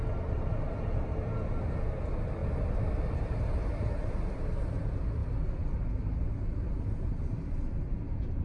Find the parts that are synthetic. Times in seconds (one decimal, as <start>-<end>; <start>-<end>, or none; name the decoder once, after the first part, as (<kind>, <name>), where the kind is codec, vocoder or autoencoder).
none